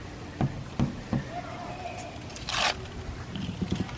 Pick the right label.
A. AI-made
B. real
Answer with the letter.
B